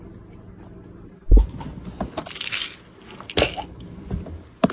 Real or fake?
real